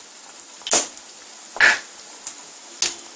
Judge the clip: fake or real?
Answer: real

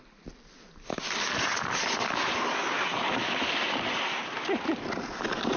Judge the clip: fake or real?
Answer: real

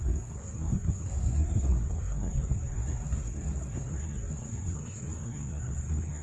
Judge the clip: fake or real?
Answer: fake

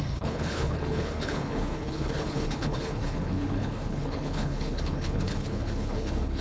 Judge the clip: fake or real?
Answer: fake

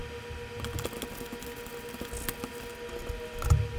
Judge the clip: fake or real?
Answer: real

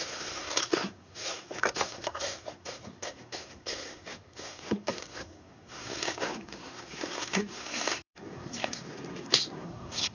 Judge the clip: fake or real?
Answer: fake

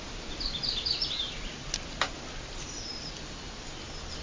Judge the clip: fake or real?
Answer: real